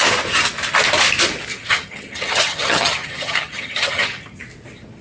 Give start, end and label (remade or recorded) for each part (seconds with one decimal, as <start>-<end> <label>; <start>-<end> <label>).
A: 0.0-1.5 recorded; 1.5-4.4 remade; 4.4-5.0 recorded